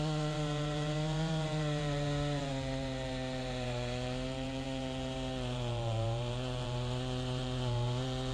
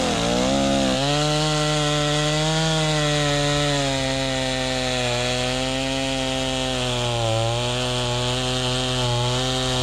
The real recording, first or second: second